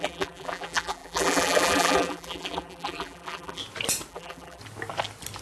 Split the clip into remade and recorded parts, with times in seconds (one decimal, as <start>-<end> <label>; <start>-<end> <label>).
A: 0.0-3.6 remade; 3.6-4.1 recorded; 4.1-4.6 remade; 4.6-5.4 recorded